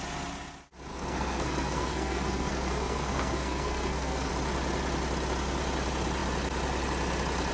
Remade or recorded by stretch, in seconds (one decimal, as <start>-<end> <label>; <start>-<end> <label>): 0.0-0.9 recorded; 0.9-4.3 remade; 4.3-7.5 recorded

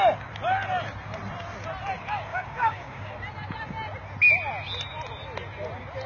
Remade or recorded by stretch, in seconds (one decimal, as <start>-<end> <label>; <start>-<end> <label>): 0.0-2.3 recorded; 2.3-3.1 remade; 3.1-6.1 recorded